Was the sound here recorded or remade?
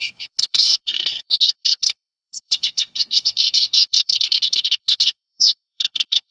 remade